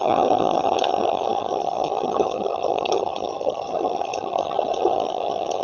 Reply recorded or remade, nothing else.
remade